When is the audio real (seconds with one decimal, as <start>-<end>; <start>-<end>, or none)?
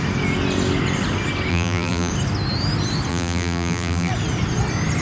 0.0-1.5; 2.1-3.1; 4.1-5.0